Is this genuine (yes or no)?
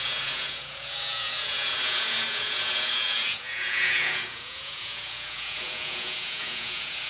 no